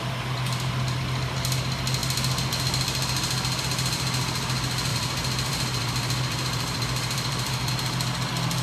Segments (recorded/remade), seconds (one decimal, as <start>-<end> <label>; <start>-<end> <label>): 0.0-4.9 recorded; 4.9-7.7 remade; 7.7-8.6 recorded